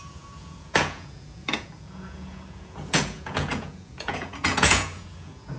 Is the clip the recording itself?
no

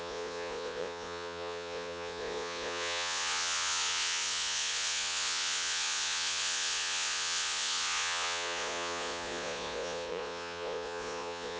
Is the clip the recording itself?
no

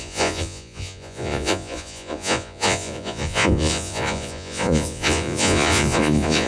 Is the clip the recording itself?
no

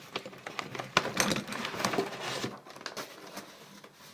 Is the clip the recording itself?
yes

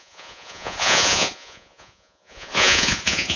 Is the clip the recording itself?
no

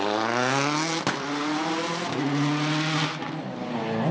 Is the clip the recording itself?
yes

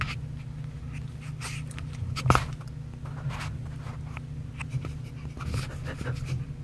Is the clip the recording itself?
yes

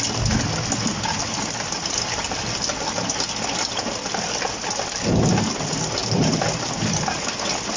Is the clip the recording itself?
yes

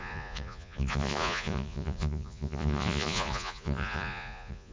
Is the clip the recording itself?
no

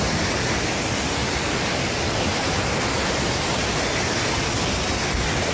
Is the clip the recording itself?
yes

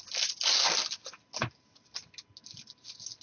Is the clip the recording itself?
yes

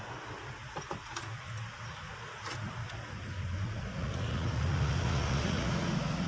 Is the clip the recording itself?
no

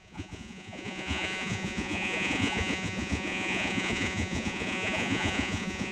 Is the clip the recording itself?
no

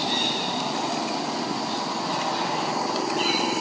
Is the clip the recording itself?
yes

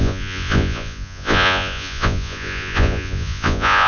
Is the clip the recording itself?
no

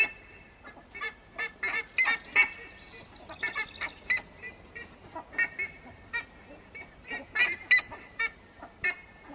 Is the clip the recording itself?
yes